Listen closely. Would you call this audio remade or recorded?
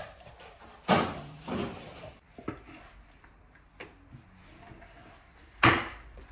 remade